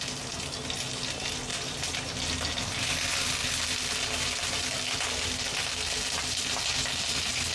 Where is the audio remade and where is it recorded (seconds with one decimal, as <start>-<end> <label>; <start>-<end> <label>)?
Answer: 0.0-7.5 recorded